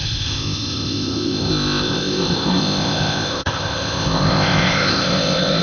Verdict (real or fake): fake